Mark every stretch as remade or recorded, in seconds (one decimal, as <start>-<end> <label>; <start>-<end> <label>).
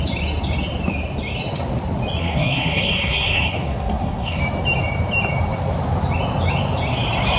0.0-2.2 recorded; 2.2-4.4 remade; 4.4-7.4 recorded